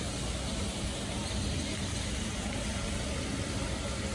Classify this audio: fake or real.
real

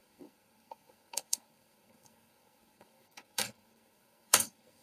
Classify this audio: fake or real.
fake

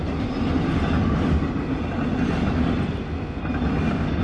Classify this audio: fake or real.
real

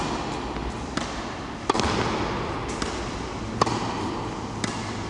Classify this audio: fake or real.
real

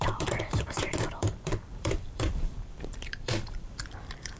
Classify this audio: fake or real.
fake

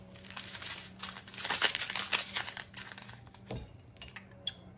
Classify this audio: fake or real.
real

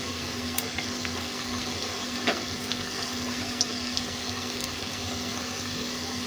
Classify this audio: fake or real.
fake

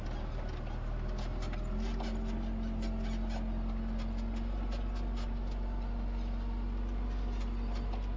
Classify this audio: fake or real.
real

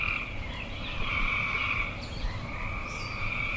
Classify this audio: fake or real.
fake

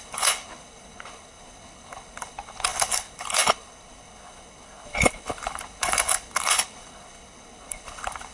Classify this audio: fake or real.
fake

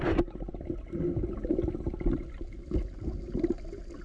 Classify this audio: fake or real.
real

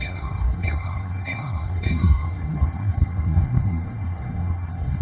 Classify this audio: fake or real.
fake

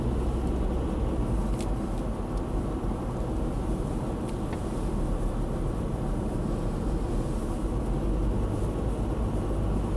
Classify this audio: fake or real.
real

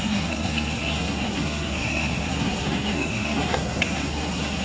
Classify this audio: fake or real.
fake